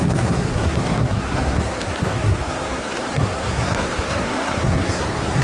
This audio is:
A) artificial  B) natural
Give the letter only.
A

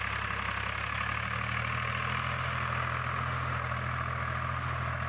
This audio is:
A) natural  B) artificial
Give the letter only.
A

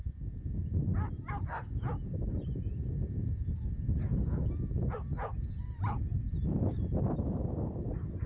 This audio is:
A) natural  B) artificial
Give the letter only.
A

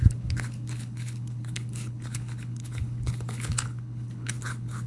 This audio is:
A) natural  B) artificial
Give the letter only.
B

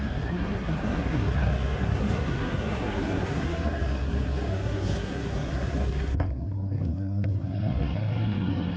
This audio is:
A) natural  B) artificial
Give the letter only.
B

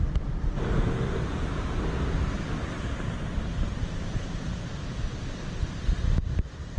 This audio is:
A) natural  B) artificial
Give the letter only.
B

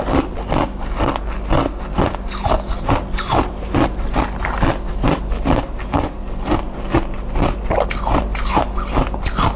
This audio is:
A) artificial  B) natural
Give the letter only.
B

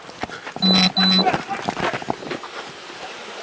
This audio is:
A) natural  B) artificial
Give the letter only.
A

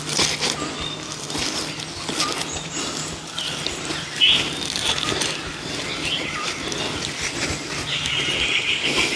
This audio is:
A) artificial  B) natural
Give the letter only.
B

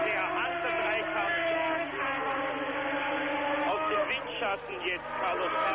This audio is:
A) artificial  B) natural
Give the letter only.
B